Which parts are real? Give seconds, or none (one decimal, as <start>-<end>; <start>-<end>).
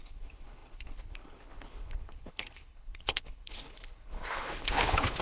none